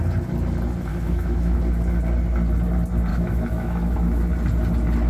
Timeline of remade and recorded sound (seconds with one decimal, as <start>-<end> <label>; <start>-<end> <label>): 0.0-0.9 recorded; 0.9-1.6 remade; 1.6-3.1 recorded; 3.1-4.3 remade; 4.3-5.1 recorded